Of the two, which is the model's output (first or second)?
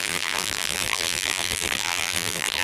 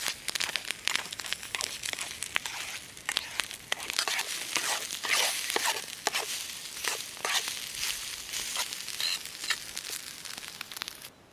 first